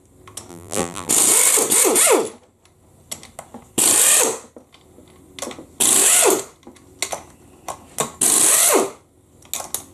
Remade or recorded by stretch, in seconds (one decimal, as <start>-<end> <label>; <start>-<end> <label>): 0.0-0.5 recorded; 0.5-1.1 remade; 1.1-9.9 recorded

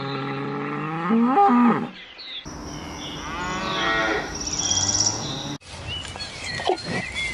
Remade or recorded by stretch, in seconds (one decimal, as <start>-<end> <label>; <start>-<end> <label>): 0.0-7.3 recorded

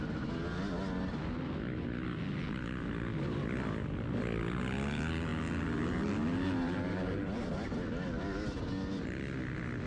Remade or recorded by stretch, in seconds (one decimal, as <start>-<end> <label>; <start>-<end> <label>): 0.0-9.9 recorded